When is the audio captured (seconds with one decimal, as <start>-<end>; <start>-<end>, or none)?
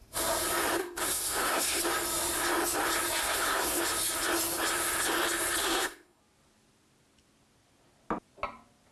0.0-0.8; 1.8-3.2; 3.8-5.6; 6.2-8.9